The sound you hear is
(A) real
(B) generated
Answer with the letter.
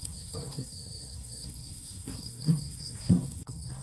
B